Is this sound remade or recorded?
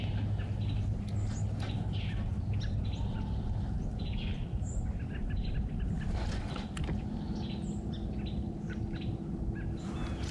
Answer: recorded